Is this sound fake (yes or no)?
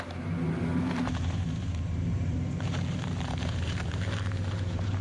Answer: yes